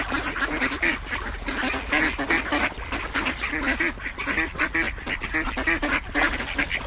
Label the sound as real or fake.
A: real